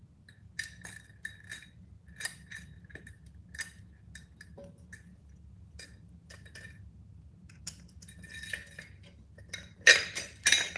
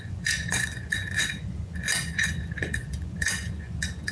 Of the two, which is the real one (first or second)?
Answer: first